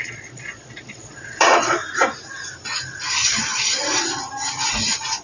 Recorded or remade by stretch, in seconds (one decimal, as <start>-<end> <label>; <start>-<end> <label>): 0.0-1.8 remade; 1.8-5.2 recorded